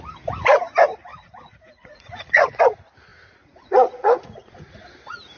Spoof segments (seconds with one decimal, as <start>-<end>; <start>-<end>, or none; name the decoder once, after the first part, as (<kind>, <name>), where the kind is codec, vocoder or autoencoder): 1.1-2.6 (vocoder, Vocos); 3.1-4.8